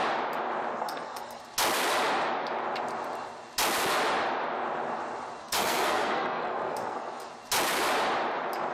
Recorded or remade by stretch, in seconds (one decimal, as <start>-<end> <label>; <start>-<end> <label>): 0.0-0.7 recorded; 0.7-1.4 remade; 1.4-5.4 recorded; 5.4-7.3 remade; 7.3-8.7 recorded